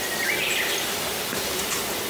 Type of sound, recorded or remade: recorded